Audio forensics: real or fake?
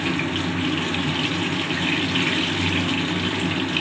real